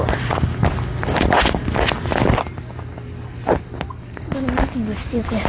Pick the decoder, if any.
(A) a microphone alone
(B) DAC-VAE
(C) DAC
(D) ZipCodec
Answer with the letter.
A